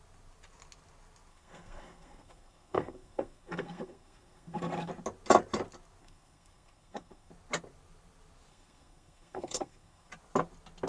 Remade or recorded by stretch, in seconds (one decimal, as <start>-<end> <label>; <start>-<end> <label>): 0.0-1.3 recorded; 1.3-4.9 remade; 4.9-6.0 recorded; 6.0-7.3 remade; 7.3-8.5 recorded; 8.5-10.1 remade; 10.1-10.9 recorded